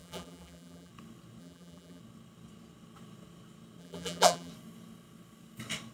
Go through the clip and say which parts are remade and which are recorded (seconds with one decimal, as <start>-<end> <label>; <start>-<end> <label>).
0.0-0.9 remade; 0.9-1.4 recorded; 1.4-2.0 remade; 2.0-3.8 recorded; 3.8-4.5 remade; 4.5-5.9 recorded